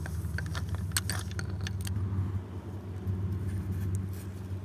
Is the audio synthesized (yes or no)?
no